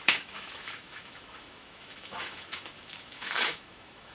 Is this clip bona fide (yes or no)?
no